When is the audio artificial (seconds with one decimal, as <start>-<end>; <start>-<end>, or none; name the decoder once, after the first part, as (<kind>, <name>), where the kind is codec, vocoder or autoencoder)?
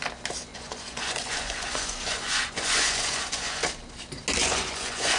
0.5-3.6 (vocoder, Vocos); 4.4-5.2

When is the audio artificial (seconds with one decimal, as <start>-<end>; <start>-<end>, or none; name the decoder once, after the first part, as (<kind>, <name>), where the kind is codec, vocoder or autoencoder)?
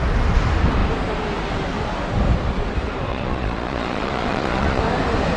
3.1-4.8 (vocoder, Vocos)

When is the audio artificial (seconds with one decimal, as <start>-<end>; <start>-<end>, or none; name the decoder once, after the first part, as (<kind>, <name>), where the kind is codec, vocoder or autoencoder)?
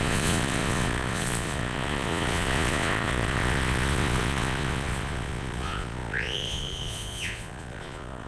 0.0-8.3 (vocoder, Vocos)